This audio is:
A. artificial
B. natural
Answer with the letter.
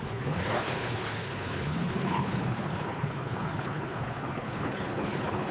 A